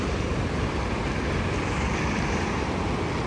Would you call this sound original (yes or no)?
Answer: yes